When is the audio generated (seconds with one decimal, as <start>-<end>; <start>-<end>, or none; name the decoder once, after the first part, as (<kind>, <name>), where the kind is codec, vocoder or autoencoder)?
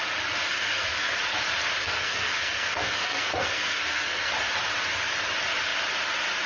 0.5-1.2 (codec, SNAC); 1.8-4.3